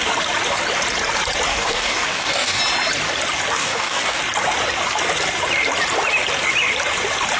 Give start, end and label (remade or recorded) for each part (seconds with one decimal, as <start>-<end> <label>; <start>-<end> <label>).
0.0-1.5 recorded; 1.5-2.6 remade; 2.6-3.6 recorded; 3.6-4.2 remade; 4.2-7.4 recorded